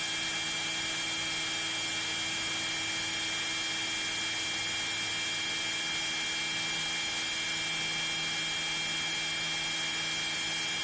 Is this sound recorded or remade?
recorded